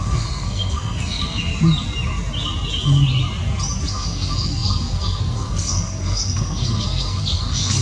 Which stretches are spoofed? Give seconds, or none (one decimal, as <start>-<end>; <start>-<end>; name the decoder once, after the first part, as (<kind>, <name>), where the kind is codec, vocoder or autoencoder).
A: 0.0-1.5 (codec, SNAC); 3.9-7.8